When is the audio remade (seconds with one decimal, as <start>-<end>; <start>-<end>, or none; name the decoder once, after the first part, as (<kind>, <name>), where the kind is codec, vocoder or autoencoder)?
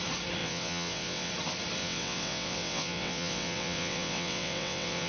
0.4-1.3 (vocoder, WaveNeXt); 1.8-5.1